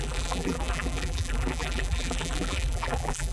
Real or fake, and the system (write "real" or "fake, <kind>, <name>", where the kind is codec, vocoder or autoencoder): fake, vocoder, BigVGAN v2